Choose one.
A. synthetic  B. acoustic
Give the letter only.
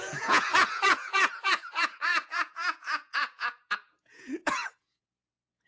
A